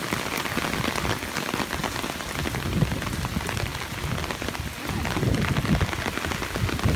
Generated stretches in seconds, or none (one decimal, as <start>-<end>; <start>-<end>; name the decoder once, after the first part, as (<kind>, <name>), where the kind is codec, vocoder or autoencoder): none